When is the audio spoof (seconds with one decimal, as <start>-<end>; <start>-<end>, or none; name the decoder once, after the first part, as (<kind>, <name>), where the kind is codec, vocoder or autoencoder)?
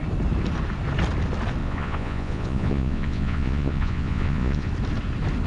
1.6-4.7 (vocoder, Vocos)